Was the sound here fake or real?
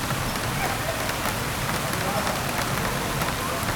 fake